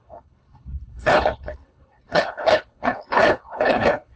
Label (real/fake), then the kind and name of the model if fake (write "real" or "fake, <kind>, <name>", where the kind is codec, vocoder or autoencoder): fake, codec, HILCodec